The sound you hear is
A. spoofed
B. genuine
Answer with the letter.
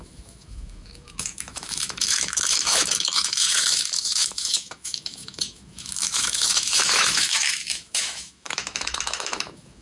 A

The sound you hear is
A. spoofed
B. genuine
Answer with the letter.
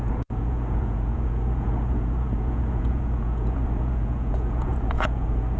A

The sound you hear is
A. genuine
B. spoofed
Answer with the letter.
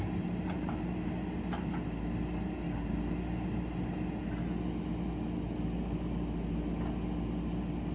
A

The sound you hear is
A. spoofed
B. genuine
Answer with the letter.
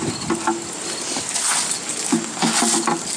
B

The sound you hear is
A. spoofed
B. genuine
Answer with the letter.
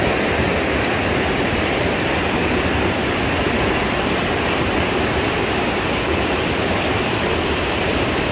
A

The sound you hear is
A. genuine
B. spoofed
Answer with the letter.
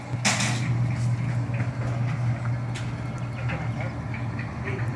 A